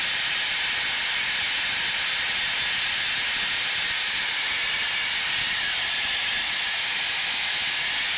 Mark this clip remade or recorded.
recorded